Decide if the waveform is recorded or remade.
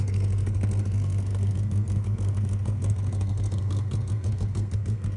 remade